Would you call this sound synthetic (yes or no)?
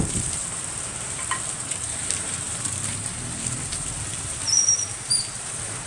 yes